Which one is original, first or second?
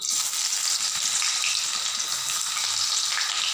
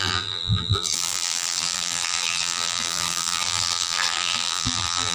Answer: first